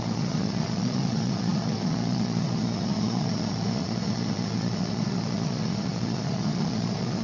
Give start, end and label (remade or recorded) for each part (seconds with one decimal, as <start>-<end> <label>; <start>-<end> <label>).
0.0-7.2 remade